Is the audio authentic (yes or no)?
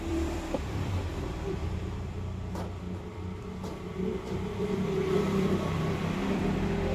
no